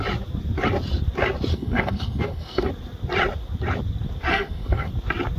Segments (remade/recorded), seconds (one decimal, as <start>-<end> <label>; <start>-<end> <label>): 0.0-1.5 recorded; 1.5-2.7 remade; 2.7-4.3 recorded; 4.3-4.9 remade; 4.9-5.4 recorded